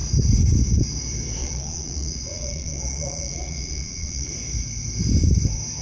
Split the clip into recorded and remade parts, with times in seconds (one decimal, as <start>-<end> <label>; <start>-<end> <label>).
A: 0.0-1.4 recorded; 1.4-4.3 remade; 4.3-5.8 recorded